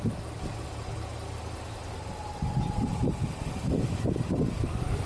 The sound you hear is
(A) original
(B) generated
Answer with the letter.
A